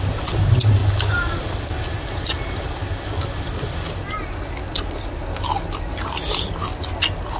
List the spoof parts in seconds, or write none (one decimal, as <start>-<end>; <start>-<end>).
none